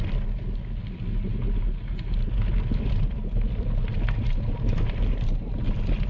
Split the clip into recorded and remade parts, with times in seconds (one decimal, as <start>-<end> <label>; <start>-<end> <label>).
0.0-6.1 recorded